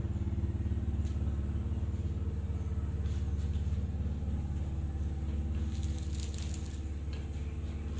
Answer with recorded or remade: recorded